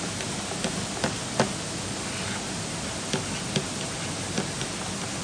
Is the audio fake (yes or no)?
no